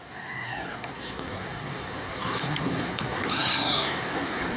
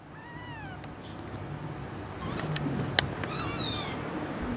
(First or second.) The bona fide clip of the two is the second